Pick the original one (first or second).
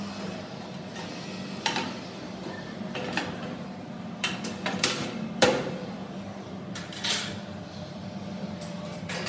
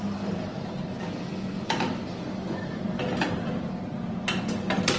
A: second